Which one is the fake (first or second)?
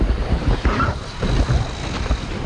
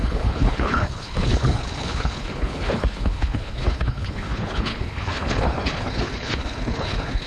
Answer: second